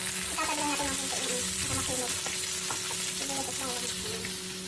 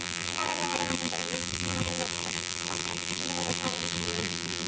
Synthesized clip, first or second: second